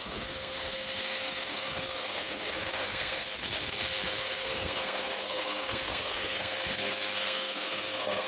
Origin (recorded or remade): remade